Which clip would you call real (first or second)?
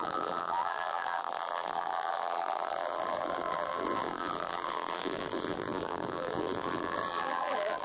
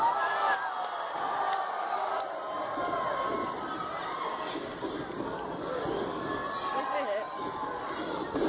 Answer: second